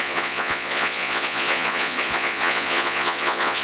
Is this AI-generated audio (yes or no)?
yes